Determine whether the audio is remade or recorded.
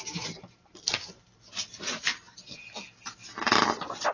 recorded